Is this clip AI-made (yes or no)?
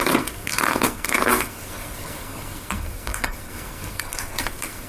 yes